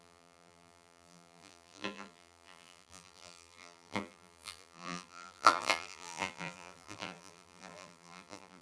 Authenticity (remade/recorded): remade